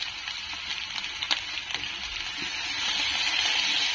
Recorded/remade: recorded